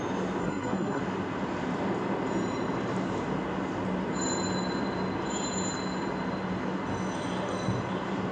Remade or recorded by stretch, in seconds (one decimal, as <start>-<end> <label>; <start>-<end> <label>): 0.0-0.4 recorded; 0.4-1.0 remade; 1.0-8.3 recorded